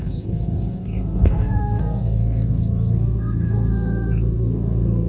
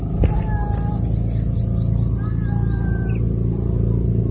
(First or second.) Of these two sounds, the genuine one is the second